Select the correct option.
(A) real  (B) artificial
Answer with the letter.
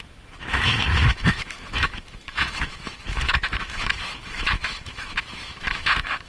B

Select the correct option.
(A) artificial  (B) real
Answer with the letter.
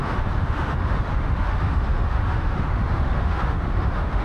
A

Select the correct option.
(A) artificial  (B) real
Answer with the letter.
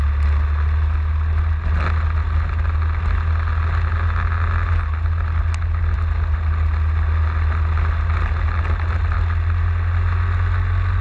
B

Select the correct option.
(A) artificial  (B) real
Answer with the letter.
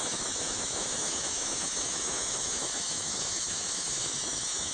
A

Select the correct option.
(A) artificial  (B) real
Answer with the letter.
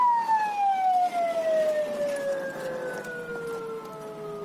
B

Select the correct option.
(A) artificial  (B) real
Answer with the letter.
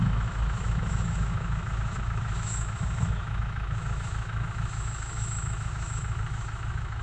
A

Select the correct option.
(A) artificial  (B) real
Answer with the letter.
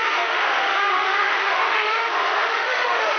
A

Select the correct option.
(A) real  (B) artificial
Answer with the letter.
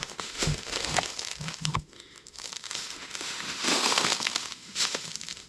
B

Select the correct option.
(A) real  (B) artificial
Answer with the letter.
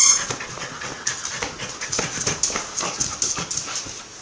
A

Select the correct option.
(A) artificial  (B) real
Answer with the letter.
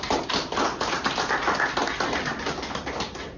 B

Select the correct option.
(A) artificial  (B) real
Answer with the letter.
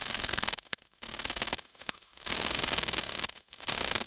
A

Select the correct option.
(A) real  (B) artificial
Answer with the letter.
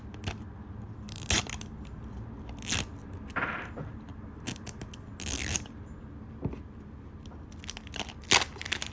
A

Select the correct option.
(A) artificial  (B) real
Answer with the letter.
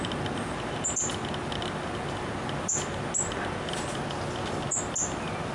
B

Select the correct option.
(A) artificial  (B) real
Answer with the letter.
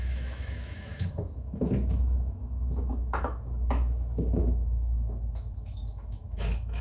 A